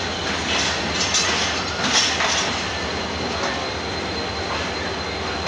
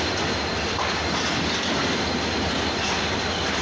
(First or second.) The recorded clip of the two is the first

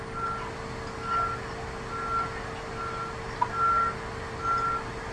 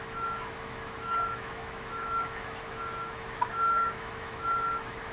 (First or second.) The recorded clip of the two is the first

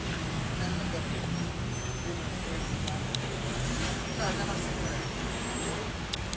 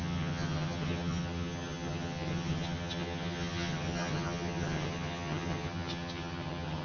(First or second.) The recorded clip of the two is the first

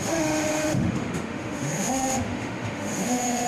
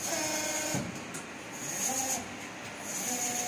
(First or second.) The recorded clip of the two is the second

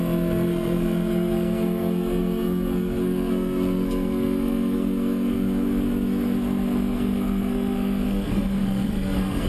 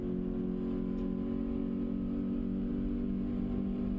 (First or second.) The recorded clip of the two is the second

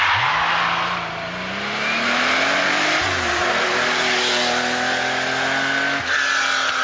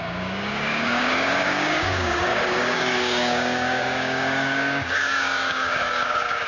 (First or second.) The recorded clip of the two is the first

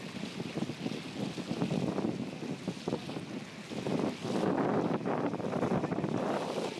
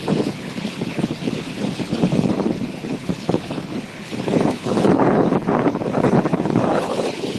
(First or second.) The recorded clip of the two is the first